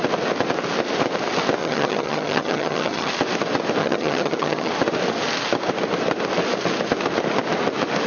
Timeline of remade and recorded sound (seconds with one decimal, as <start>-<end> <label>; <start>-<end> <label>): 0.0-1.6 recorded; 1.6-3.1 remade; 3.1-3.8 recorded; 3.8-4.7 remade; 4.7-8.1 recorded